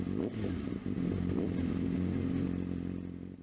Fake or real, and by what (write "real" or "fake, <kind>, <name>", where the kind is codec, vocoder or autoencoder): real